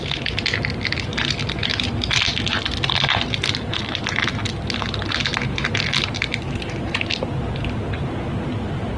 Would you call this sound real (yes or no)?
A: yes